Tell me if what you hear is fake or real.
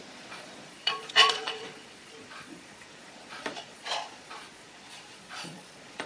fake